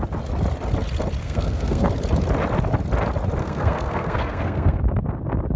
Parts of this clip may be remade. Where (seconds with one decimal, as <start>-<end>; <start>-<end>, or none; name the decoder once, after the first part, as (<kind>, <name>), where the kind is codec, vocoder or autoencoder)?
1.2-1.9 (codec, SNAC); 3.4-4.8